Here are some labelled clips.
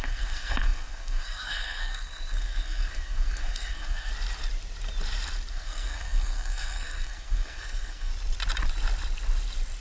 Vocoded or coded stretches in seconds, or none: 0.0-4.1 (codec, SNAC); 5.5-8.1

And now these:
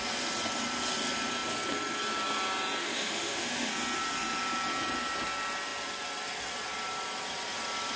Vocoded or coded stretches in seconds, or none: 2.8-3.7 (autoencoder, DAC-VAE)

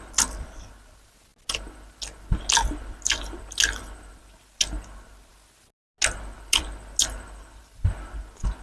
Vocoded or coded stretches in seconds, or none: none

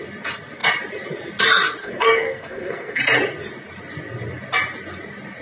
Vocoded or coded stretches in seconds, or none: 1.8-3.0 (codec, SNAC)

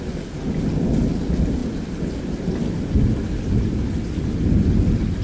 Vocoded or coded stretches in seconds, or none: none